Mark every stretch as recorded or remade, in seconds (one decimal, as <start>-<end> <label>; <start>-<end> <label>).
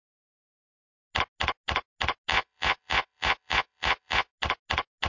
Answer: 0.0-2.3 recorded; 2.3-4.3 remade; 4.3-5.1 recorded